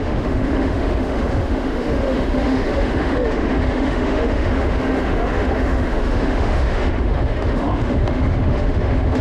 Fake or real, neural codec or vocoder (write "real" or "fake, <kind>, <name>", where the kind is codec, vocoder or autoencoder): fake, autoencoder, DAC-VAE